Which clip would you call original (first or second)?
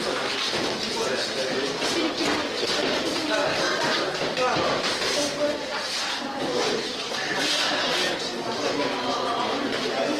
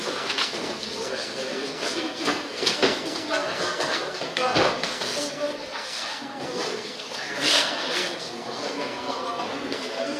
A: first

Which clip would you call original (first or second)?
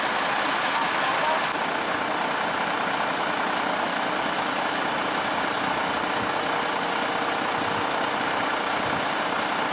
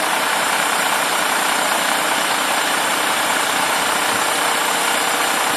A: first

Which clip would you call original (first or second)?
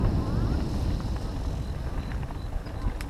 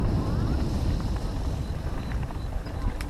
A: first